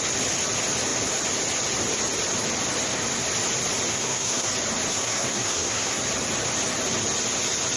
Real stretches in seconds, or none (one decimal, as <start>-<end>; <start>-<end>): 0.0-3.9; 4.5-4.9; 6.0-7.8

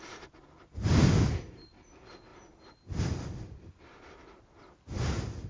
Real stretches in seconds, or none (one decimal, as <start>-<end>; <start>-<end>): 0.0-5.5

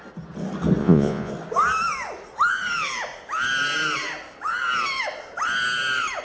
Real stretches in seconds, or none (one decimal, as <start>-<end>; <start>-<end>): 0.0-0.8; 1.3-6.2

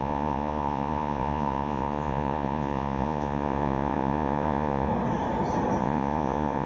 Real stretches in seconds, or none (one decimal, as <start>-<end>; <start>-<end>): 4.9-5.8